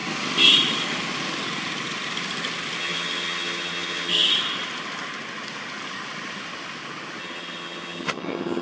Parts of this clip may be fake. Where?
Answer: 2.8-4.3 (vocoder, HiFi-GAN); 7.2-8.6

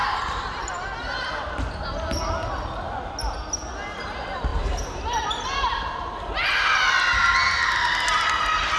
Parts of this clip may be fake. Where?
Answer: none

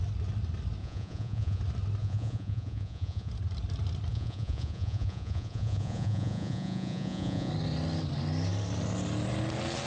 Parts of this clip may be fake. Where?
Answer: 0.8-1.6 (vocoder, Vocos); 2.0-3.3; 4.1-7.5

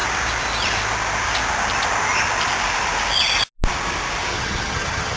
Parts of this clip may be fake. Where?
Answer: 4.3-5.2 (vocoder, HiFi-GAN)

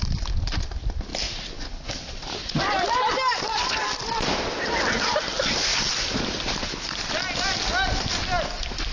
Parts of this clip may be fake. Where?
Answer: none

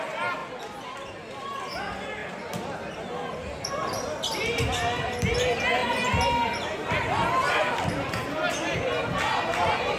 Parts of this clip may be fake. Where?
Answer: none

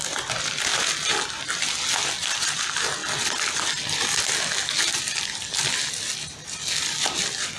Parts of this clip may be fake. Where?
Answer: none